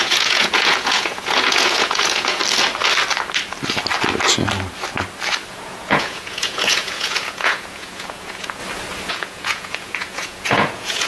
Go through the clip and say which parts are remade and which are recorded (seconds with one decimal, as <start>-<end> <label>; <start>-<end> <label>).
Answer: 0.0-2.4 remade; 2.4-5.5 recorded; 5.5-8.6 remade; 8.6-9.1 recorded; 9.1-11.1 remade